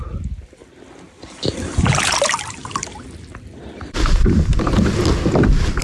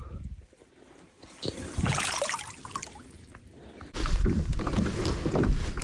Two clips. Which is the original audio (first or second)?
second